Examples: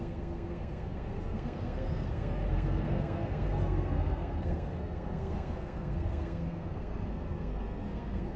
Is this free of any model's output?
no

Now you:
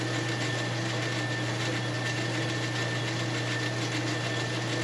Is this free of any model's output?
yes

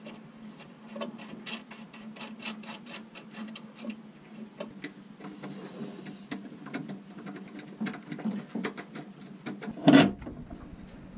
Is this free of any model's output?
yes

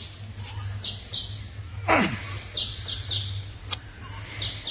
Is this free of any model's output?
yes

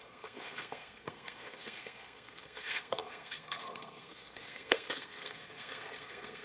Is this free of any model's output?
no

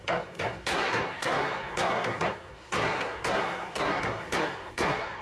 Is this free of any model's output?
no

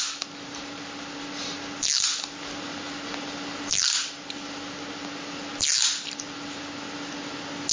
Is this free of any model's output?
yes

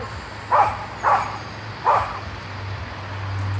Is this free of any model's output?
yes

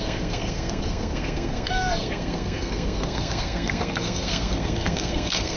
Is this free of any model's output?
no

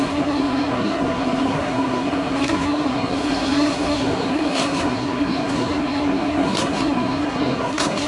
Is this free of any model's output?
no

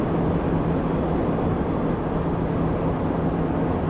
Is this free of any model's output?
yes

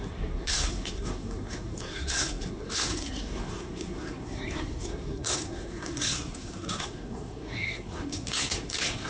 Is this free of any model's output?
no